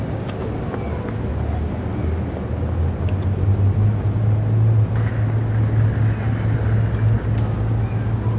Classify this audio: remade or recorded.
recorded